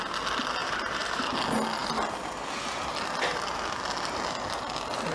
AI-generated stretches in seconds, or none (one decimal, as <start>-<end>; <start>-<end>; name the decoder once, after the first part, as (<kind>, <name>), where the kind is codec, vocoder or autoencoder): 0.6-1.3 (vocoder, BigVGAN v2)